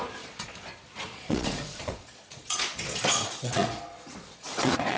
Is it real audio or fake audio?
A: fake